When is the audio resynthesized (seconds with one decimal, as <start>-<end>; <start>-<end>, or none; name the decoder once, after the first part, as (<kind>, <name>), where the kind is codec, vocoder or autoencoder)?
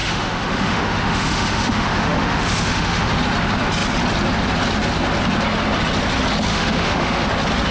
0.0-3.2 (autoencoder, DAC-VAE); 6.5-7.2